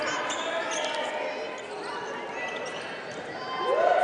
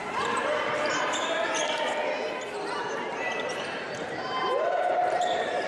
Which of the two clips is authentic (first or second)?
first